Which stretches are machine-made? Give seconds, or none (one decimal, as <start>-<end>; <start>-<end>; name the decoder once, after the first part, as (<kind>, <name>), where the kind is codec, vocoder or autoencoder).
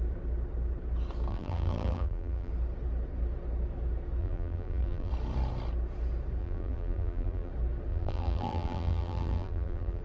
1.3-2.5 (vocoder, BigVGAN v2); 4.2-5.1; 6.4-7.5; 7.9-10.0